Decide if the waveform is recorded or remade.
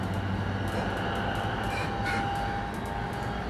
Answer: recorded